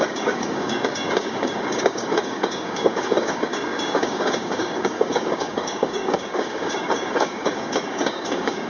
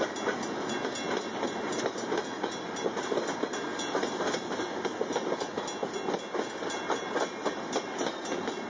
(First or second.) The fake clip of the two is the first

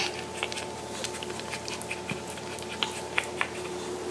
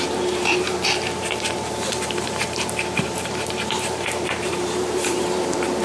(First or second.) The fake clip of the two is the second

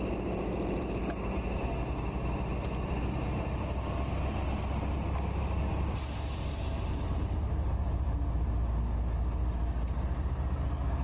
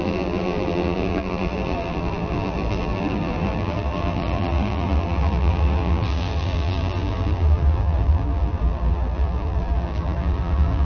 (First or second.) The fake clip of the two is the second